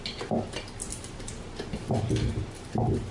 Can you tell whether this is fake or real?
real